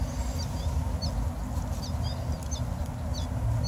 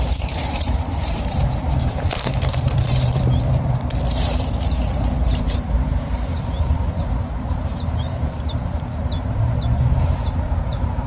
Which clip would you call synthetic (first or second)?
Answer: second